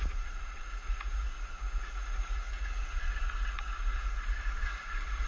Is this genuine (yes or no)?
no